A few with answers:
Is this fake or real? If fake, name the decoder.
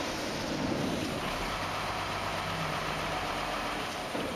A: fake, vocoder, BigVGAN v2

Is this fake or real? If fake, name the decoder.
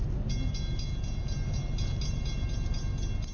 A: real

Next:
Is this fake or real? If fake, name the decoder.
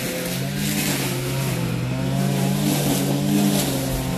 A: real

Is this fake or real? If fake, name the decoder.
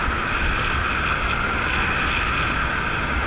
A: real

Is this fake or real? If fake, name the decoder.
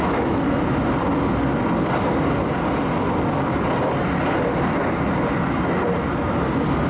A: real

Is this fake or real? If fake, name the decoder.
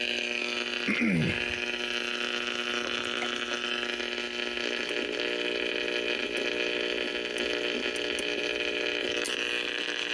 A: real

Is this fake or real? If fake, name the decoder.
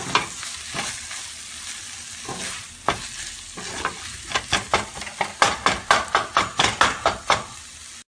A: real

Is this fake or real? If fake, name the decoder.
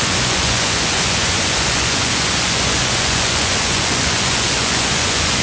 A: fake, vocoder, Vocos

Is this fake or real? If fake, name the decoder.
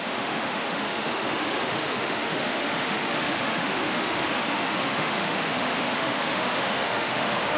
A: fake, autoencoder, DAC-VAE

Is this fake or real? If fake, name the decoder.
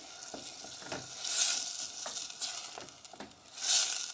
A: real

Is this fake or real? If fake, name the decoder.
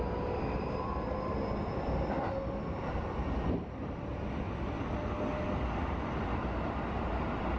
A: real